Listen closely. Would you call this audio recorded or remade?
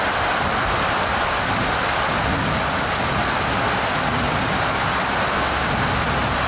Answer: recorded